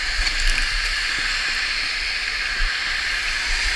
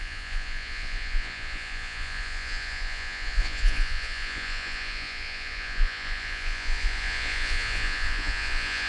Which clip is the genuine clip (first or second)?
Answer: first